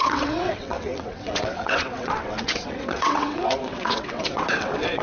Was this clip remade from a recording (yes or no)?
yes